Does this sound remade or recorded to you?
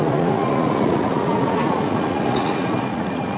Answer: remade